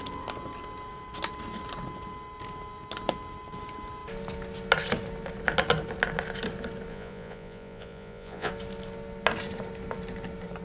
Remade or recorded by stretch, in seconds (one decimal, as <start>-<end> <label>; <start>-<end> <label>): 0.0-6.9 recorded; 6.9-8.5 remade; 8.5-10.6 recorded

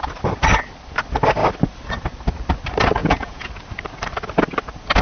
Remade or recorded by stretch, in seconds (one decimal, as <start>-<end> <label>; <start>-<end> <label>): 0.0-3.0 recorded; 3.0-3.5 remade; 3.5-5.0 recorded